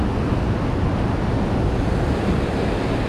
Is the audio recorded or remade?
recorded